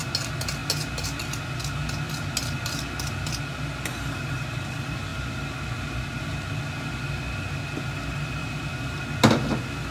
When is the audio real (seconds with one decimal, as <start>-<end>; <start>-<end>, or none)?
0.0-8.4; 9.0-9.9

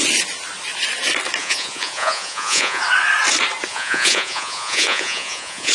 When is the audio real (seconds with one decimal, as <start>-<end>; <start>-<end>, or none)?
0.0-1.4; 2.8-3.7

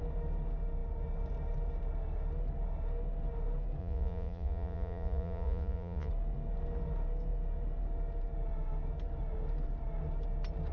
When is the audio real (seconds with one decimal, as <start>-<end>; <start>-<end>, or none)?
0.0-3.8; 6.1-10.7

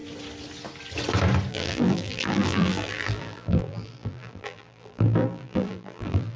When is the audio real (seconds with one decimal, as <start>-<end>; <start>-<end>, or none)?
0.0-1.5

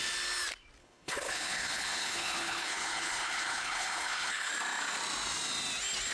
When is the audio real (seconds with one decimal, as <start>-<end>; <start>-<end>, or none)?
0.0-0.8; 4.5-6.1

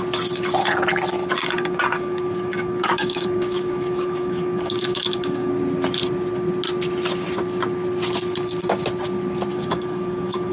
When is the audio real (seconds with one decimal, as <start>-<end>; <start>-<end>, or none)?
0.0-1.4; 5.5-9.5